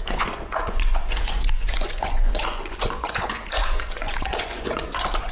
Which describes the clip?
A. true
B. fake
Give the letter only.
B